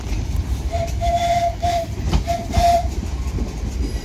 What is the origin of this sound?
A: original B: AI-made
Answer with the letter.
B